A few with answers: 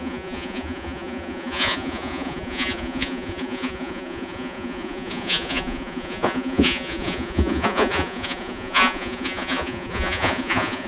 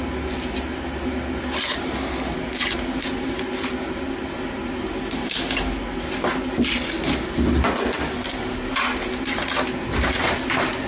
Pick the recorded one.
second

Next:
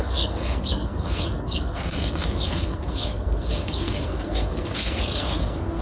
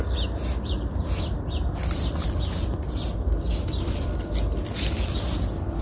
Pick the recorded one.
second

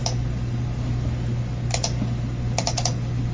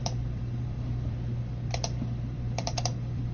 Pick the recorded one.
first